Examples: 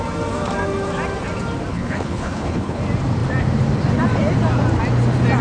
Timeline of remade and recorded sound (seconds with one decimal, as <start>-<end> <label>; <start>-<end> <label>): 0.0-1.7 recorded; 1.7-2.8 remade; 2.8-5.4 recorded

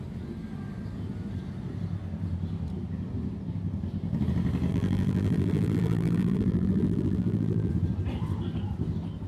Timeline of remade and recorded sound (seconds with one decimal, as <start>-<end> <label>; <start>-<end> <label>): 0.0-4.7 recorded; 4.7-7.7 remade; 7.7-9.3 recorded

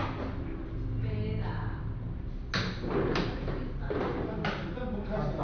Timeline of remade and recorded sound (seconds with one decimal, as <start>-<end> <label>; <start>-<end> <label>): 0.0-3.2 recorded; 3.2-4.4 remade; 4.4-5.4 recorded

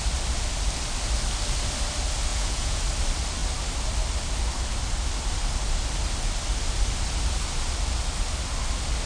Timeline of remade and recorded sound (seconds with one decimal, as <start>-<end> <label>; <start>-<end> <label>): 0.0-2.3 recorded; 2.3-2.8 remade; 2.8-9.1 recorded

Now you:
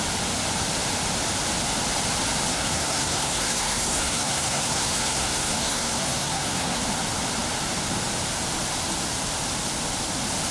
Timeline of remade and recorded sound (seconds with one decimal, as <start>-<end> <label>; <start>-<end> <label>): 0.0-2.5 recorded; 2.5-6.8 remade; 6.8-10.5 recorded